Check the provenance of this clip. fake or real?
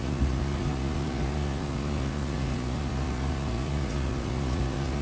fake